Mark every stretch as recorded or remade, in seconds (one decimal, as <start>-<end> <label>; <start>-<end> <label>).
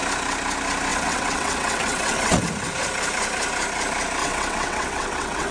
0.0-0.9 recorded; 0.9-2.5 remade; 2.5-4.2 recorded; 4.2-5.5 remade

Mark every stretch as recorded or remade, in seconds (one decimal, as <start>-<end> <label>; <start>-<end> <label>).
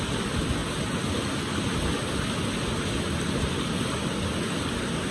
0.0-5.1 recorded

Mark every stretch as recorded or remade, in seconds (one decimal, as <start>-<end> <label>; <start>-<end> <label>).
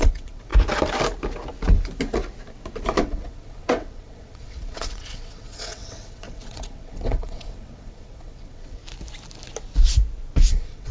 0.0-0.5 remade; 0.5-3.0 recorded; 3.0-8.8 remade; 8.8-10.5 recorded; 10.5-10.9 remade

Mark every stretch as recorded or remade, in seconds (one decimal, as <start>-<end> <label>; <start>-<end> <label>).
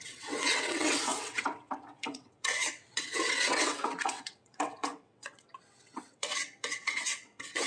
0.0-7.7 remade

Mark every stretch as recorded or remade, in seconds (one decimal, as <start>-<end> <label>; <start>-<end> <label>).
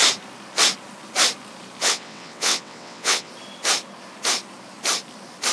0.0-1.8 recorded; 1.8-3.3 remade; 3.3-5.5 recorded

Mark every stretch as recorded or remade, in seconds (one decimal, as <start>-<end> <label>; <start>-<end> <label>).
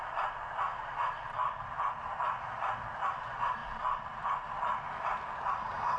0.0-6.0 recorded